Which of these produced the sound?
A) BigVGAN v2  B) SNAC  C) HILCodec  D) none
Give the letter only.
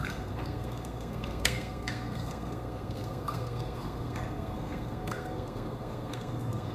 B